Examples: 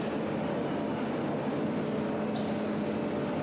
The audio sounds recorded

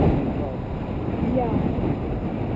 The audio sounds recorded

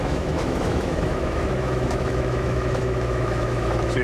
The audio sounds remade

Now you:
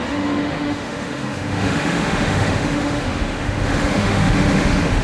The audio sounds remade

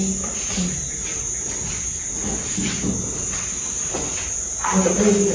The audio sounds recorded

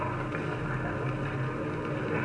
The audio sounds recorded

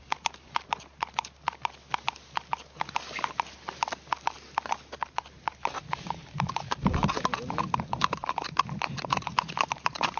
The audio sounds recorded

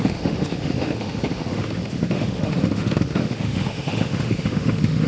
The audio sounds remade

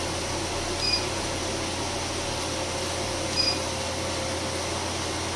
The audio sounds recorded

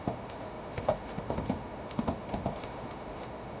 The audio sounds remade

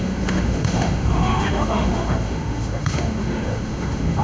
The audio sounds remade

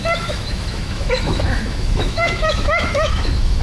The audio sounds remade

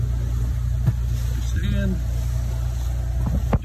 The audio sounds recorded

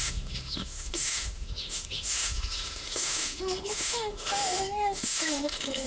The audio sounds remade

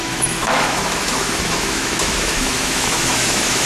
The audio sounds remade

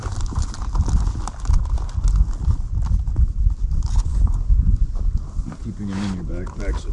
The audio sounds recorded